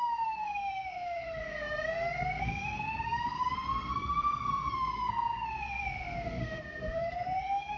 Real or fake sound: fake